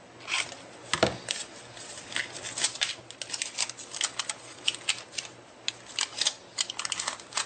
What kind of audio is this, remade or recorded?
recorded